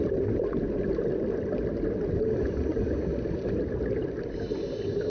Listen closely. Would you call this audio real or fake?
real